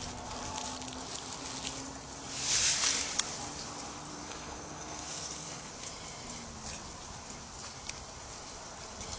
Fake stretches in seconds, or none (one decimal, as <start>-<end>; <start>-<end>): 4.1-5.7